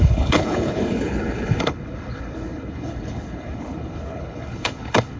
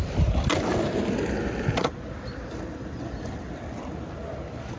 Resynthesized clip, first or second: first